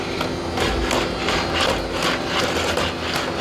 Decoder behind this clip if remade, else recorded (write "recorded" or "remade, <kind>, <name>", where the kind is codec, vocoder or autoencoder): recorded